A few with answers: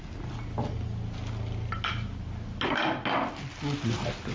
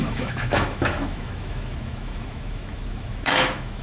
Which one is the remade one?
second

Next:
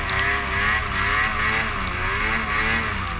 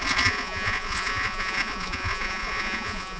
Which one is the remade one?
second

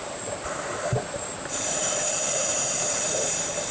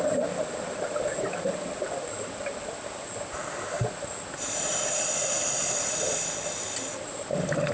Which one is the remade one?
first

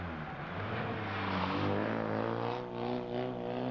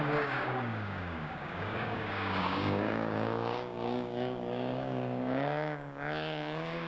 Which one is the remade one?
second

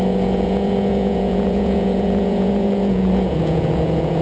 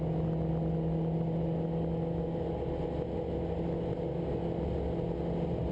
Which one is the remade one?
first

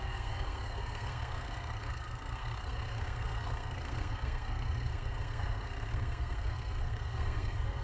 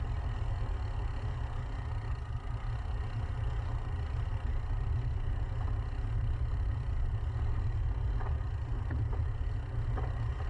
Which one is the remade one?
first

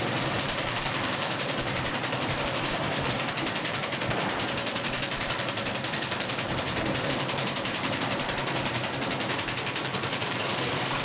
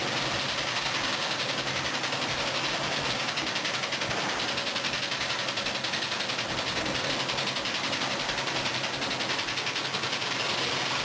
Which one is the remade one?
first